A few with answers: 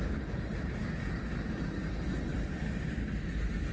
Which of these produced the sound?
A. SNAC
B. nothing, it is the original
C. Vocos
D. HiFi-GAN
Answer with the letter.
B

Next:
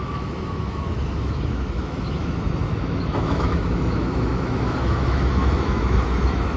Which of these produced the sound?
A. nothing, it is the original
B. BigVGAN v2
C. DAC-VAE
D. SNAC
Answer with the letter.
C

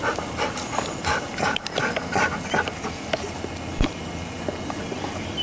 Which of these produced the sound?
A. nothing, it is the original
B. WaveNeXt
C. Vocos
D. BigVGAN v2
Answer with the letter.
A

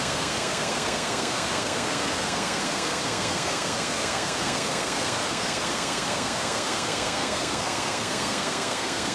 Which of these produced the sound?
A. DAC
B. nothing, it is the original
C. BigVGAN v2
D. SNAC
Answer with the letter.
D